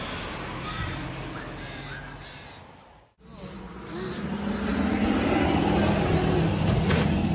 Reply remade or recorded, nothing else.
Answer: recorded